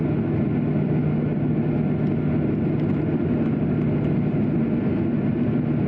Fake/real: real